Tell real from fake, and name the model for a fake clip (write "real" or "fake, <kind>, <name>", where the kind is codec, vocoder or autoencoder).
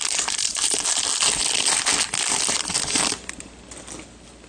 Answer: real